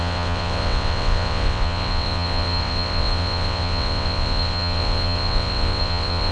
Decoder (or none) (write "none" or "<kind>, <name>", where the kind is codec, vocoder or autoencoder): vocoder, WaveNeXt